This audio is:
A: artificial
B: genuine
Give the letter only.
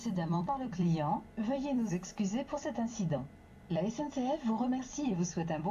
A